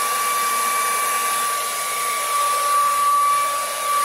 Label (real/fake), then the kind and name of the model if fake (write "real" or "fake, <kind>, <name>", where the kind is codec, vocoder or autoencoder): real